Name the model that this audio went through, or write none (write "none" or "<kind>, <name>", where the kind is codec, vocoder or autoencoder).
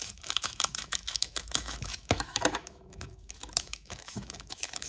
autoencoder, DAC-VAE